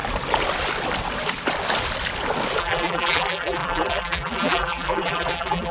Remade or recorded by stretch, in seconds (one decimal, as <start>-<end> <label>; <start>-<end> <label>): 0.0-2.6 recorded; 2.6-5.7 remade